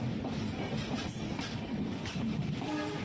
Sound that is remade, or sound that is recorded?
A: recorded